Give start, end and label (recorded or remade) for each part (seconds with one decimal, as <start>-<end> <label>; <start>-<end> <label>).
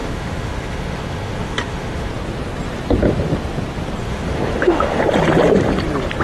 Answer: 0.0-2.1 remade; 2.1-4.0 recorded; 4.0-5.0 remade; 5.0-6.2 recorded